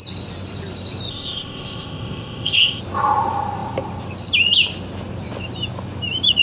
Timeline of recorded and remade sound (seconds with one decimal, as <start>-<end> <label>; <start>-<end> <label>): 0.0-1.1 recorded; 1.1-2.8 remade; 2.8-6.4 recorded